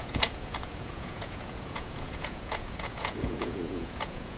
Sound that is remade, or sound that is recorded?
remade